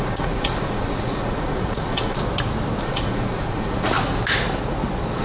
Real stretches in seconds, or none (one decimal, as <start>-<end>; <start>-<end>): 2.2-2.8; 3.9-5.2